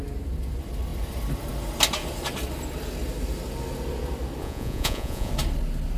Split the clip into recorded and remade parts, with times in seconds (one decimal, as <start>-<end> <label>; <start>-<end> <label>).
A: 0.0-4.4 recorded; 4.4-5.3 remade; 5.3-6.0 recorded